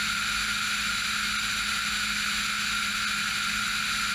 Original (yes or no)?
yes